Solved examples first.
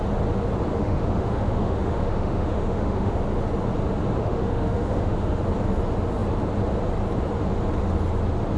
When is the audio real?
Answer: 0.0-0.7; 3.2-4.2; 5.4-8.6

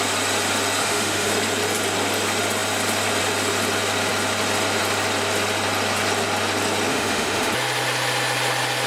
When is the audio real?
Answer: 0.0-0.8; 1.3-6.9; 7.5-8.9